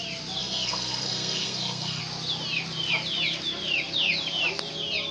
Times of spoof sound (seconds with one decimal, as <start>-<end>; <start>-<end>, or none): 0.4-2.0